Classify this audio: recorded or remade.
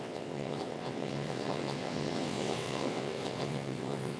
remade